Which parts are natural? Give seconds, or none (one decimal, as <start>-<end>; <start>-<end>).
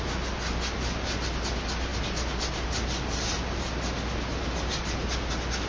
0.0-5.7